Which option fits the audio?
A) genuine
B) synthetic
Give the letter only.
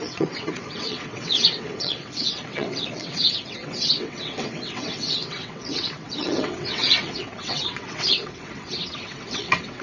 B